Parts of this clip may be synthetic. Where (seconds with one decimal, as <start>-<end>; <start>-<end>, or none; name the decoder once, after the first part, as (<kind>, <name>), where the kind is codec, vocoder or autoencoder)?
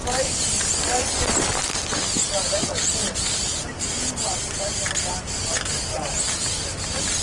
0.0-0.7 (vocoder, BigVGAN v2); 2.2-5.0